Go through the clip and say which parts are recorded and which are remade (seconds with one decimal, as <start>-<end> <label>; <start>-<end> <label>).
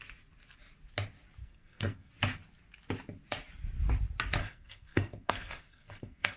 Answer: 0.0-1.4 recorded; 1.4-2.1 remade; 2.1-4.4 recorded; 4.4-6.4 remade